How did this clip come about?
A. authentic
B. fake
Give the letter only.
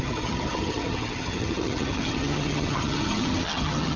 B